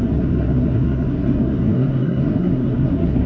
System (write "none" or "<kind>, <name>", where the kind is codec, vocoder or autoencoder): codec, SNAC